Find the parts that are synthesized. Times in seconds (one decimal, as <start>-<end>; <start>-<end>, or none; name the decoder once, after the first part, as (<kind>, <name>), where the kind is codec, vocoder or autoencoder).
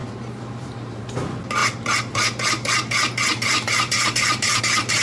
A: 0.0-1.0 (vocoder, BigVGAN v2); 1.6-4.6